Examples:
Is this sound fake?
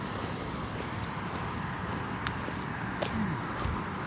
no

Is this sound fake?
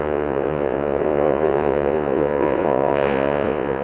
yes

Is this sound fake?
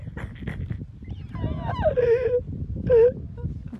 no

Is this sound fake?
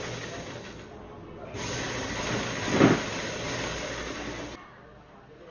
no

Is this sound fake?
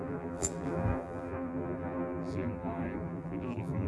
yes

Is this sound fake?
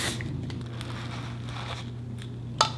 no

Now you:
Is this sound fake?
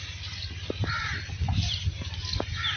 no